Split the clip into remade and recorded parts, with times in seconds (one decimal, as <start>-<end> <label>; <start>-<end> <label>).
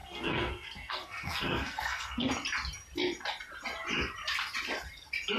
0.0-2.3 remade; 2.3-5.4 recorded